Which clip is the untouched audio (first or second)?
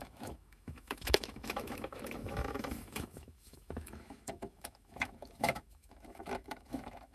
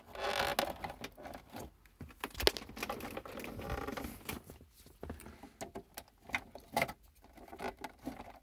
second